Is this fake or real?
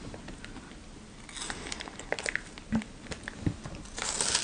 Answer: real